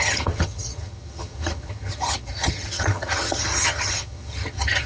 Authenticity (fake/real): fake